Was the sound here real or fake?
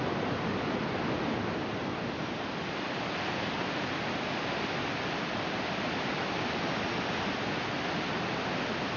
real